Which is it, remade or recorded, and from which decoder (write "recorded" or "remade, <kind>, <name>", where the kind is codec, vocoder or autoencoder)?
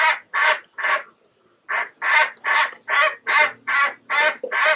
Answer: recorded